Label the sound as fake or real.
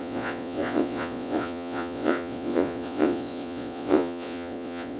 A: fake